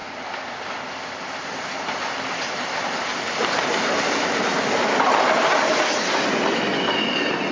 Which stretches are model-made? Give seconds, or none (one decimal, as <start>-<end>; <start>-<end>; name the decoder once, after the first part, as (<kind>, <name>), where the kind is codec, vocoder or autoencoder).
none